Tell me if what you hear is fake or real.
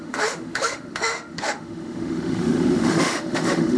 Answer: fake